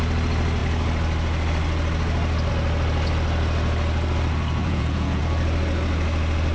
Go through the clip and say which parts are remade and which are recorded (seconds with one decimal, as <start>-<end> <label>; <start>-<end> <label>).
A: 0.0-4.6 recorded; 4.6-5.2 remade; 5.2-6.5 recorded